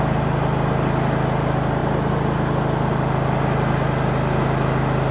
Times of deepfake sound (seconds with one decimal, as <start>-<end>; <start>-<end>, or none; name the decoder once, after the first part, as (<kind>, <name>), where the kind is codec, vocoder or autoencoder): none